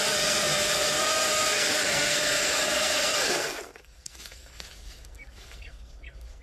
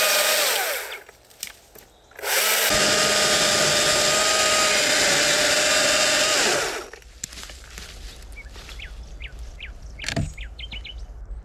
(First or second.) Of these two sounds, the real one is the second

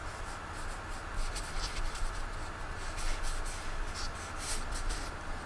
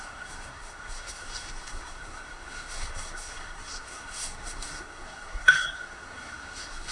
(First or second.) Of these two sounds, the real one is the first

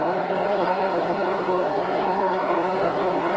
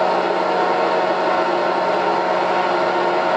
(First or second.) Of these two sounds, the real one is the second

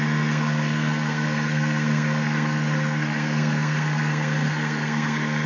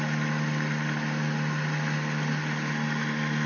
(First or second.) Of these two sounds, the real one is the second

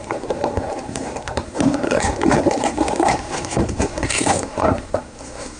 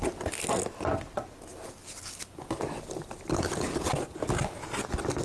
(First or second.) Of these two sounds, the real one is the second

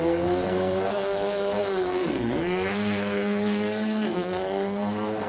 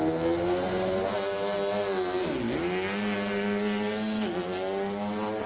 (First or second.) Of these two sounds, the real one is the second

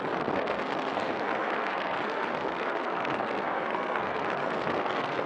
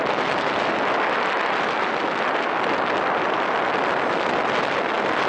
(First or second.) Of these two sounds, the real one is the second